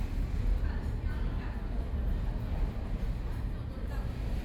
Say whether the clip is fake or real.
real